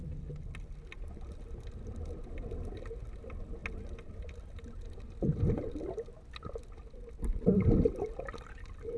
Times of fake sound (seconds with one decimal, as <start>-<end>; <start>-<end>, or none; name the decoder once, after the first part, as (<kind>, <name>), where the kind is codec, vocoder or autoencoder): none